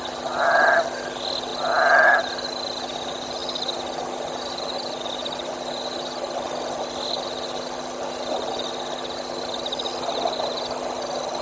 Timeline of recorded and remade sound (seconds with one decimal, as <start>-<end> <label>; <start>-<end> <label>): 0.0-11.4 recorded